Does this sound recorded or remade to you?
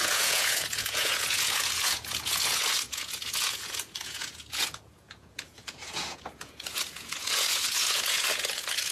remade